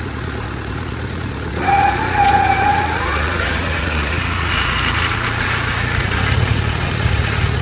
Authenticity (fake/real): fake